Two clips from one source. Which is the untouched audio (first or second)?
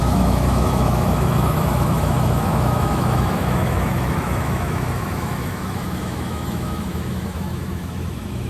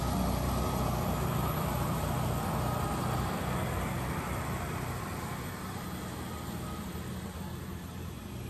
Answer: second